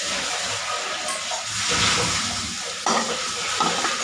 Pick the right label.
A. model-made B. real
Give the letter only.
B